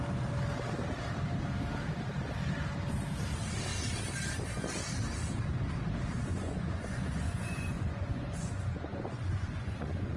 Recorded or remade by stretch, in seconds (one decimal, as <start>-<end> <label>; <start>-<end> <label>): 0.0-6.3 recorded; 6.3-10.2 remade